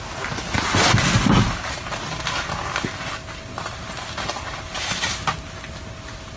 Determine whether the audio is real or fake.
real